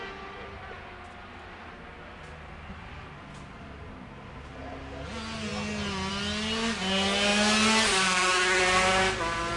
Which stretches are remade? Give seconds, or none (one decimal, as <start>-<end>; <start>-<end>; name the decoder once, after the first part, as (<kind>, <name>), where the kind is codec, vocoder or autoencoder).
none